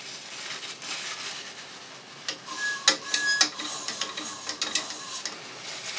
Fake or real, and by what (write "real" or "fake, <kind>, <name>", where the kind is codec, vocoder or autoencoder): real